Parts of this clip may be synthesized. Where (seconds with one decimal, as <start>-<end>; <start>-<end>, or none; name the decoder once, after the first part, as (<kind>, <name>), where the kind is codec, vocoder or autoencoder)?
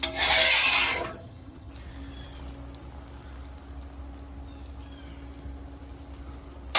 0.9-1.7 (vocoder, HiFi-GAN)